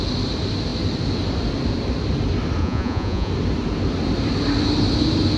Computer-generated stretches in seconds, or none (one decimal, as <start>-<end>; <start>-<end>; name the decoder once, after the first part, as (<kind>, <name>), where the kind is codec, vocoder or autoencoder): 2.6-3.3 (vocoder, Vocos)